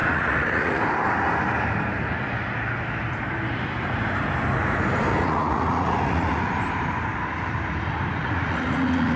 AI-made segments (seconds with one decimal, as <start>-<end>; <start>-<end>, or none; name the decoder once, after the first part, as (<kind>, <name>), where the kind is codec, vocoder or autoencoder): 0.0-0.8 (vocoder, Vocos); 5.1-6.5; 8.2-9.2